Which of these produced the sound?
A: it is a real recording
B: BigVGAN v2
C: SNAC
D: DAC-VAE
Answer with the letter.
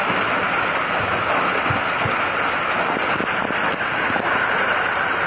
A